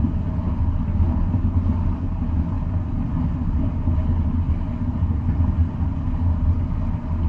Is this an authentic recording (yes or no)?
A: yes